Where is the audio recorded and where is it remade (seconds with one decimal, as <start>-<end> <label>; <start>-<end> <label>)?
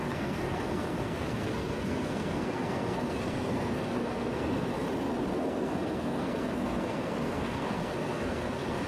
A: 0.0-4.7 remade; 4.7-5.3 recorded; 5.3-8.9 remade